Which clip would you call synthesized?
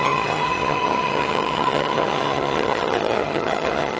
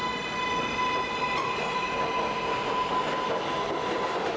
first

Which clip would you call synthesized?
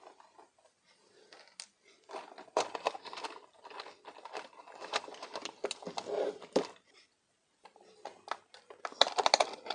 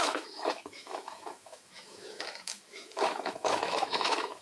second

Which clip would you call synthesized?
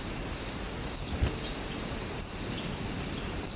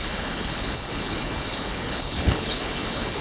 second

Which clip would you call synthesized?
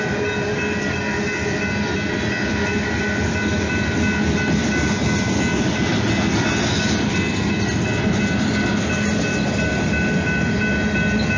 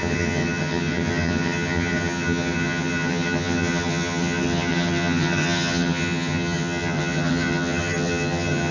second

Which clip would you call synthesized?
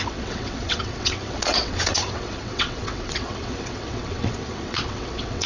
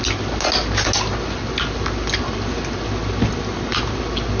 first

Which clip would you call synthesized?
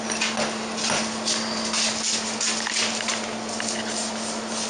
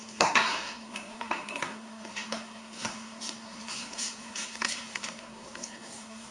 second